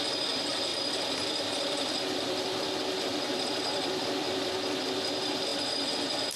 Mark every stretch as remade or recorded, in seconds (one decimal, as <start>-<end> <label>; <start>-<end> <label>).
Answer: 0.0-0.7 recorded; 0.7-4.5 remade; 4.5-6.4 recorded